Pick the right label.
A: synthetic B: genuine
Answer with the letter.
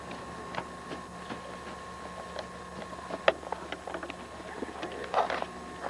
B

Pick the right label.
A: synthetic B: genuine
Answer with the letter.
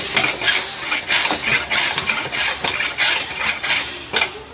B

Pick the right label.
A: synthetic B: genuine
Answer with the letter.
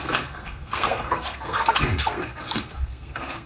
A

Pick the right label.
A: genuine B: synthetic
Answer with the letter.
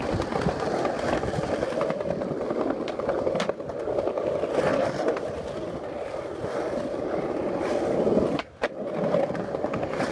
A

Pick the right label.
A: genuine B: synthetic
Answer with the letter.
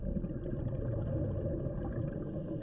A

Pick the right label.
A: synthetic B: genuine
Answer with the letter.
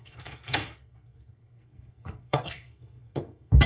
A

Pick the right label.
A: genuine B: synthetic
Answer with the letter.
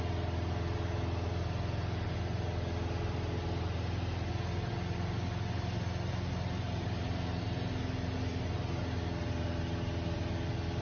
A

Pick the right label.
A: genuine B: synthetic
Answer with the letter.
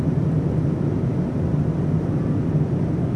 A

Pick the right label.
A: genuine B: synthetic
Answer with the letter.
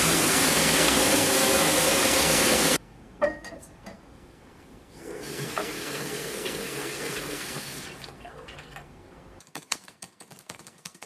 B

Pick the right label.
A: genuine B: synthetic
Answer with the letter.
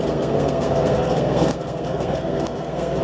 B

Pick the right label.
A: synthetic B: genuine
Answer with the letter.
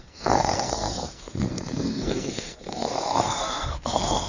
A